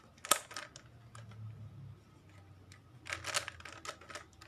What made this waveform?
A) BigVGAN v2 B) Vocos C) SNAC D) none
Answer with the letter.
D